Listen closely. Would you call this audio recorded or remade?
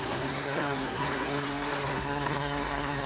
remade